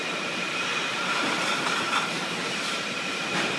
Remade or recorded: remade